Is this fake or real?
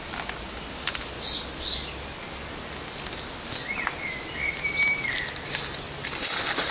real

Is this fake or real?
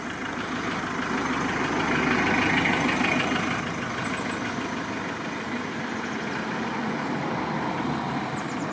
real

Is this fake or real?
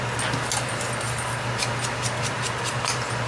real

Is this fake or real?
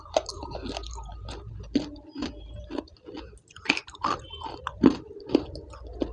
real